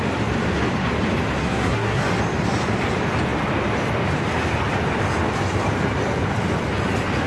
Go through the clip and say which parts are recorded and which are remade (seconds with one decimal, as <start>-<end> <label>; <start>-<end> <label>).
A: 0.0-1.4 recorded; 1.4-2.0 remade; 2.0-7.3 recorded